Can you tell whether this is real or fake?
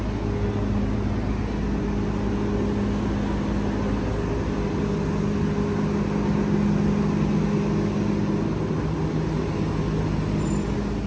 real